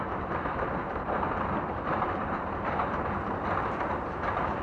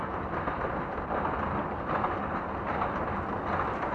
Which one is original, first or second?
second